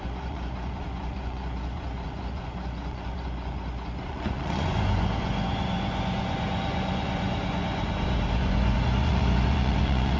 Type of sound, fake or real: fake